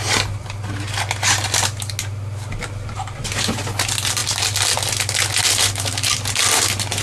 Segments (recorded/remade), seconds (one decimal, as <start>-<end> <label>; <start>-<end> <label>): 0.0-7.0 recorded